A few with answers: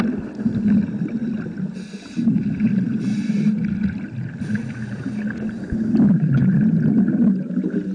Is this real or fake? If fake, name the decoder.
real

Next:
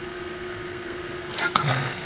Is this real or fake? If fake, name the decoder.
fake, codec, SNAC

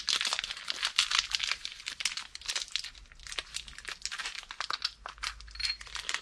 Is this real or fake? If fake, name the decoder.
real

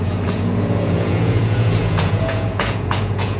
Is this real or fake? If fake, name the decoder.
fake, vocoder, Vocos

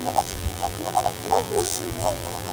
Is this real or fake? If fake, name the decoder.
fake, vocoder, BigVGAN v2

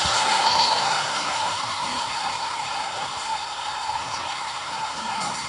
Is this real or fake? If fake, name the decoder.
fake, codec, SNAC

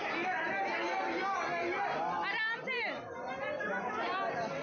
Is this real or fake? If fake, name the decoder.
real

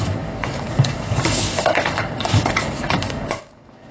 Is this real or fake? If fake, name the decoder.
fake, codec, DAC